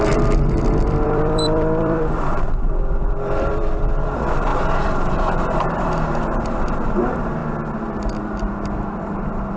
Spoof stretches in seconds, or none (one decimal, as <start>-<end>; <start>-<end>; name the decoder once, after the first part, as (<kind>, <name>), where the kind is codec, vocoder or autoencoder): 0.0-7.4 (vocoder, BigVGAN v2); 9.2-9.6